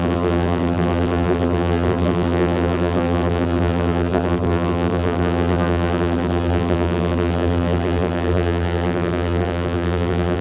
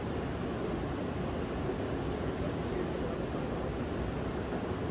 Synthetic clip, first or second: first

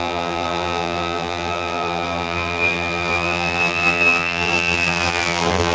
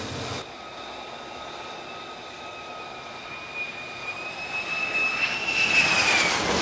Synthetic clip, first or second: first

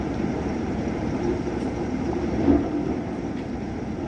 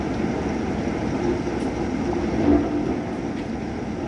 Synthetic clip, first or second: first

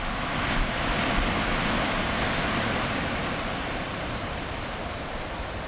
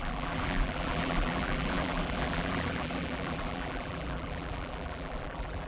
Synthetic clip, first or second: second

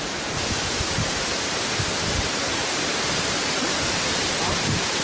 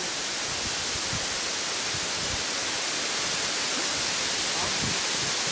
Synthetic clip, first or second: first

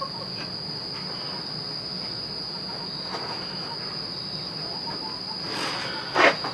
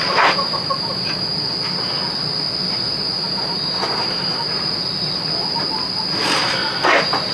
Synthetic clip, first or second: second